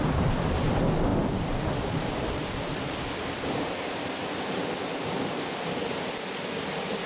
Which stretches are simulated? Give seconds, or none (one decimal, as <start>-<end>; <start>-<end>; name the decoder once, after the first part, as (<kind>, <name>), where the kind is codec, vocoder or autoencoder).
none